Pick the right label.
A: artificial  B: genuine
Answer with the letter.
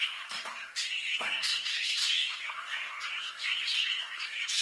A